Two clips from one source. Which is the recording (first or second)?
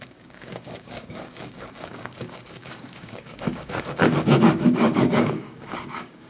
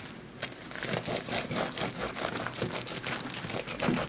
second